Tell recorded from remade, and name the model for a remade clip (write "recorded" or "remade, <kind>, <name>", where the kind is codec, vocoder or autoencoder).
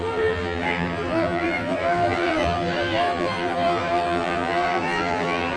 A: remade, vocoder, BigVGAN v2